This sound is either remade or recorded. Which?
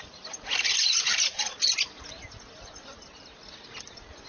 recorded